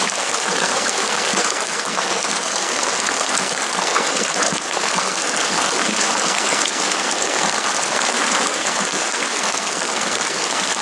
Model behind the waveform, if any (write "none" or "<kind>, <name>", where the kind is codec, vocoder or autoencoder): codec, SNAC